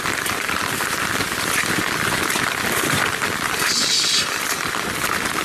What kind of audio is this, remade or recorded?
remade